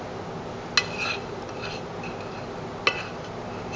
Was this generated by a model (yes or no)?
no